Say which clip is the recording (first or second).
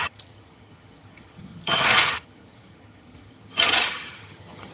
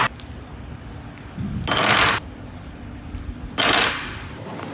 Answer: second